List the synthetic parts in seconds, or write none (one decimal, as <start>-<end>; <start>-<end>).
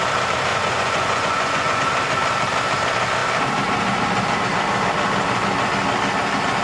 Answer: 0.5-1.8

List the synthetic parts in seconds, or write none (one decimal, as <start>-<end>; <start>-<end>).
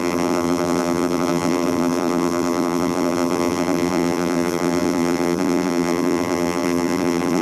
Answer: 0.0-7.4